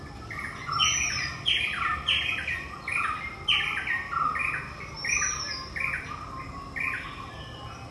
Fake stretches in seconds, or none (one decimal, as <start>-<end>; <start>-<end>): 0.6-1.5